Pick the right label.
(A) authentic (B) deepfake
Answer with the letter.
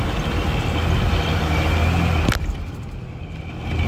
A